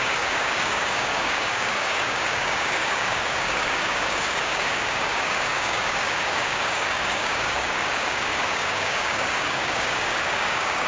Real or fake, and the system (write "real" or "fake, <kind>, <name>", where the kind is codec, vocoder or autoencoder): fake, codec, DAC